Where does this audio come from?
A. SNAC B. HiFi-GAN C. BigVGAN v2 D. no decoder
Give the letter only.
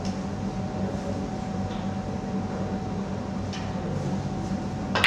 D